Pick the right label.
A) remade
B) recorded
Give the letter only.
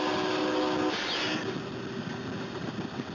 B